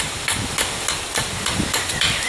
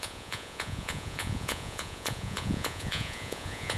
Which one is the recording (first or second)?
first